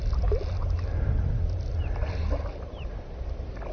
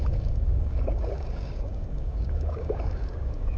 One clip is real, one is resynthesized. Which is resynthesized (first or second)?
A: second